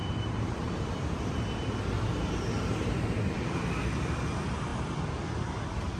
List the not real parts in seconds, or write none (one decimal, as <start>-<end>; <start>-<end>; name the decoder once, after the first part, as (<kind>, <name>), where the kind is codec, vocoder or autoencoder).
0.0-3.6 (vocoder, BigVGAN v2)